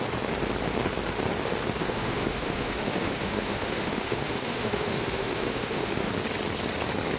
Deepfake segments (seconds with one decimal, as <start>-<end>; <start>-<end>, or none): 1.8-6.1